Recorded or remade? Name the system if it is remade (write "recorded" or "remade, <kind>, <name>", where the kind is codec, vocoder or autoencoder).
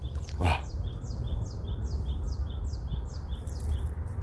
recorded